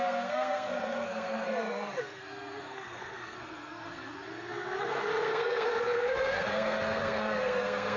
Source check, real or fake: fake